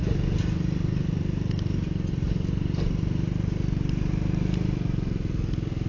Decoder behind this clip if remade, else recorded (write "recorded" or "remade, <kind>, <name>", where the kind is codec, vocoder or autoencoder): recorded